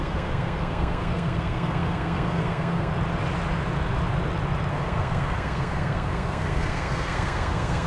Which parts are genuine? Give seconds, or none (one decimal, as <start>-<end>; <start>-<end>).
2.9-4.7

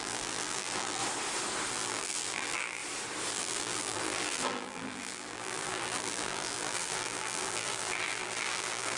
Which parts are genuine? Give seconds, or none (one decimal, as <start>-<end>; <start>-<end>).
1.0-1.7; 2.8-3.3

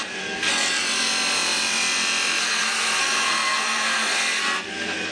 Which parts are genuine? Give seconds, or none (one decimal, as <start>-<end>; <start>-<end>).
0.5-2.4

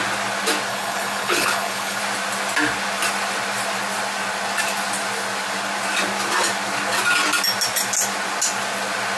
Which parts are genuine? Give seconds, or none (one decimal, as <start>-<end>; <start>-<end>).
0.0-0.7; 2.0-9.2

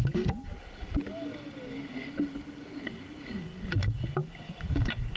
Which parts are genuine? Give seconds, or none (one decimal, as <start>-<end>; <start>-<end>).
0.0-5.2

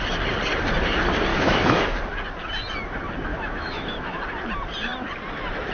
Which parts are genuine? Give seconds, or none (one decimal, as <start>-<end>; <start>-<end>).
0.0-1.3; 1.8-3.3; 4.2-5.7

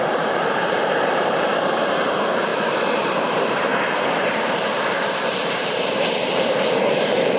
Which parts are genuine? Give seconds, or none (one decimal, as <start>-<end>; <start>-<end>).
2.5-3.1; 3.7-4.2